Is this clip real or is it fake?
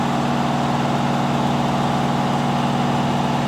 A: real